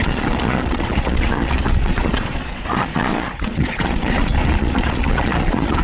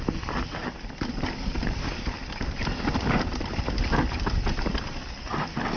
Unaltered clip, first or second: second